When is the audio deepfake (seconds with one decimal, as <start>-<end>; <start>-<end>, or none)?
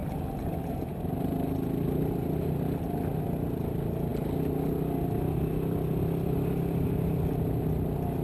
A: none